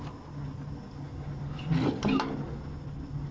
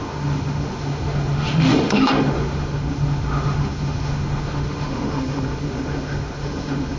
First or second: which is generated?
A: second